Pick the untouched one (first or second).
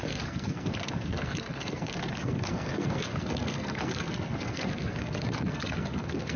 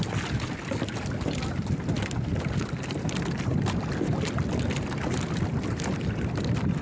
second